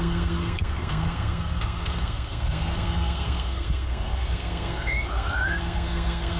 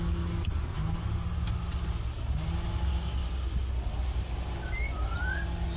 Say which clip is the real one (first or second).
second